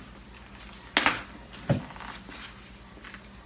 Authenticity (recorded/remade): recorded